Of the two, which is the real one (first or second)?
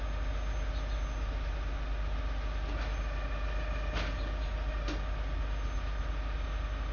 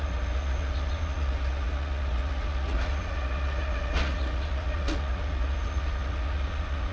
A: first